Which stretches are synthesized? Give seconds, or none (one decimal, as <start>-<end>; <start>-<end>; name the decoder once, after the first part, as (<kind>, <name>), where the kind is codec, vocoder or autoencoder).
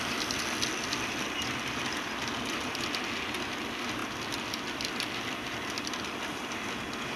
none